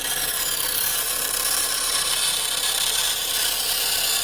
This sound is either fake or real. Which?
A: real